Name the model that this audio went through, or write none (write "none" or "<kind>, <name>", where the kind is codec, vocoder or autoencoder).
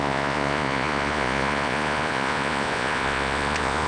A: vocoder, Vocos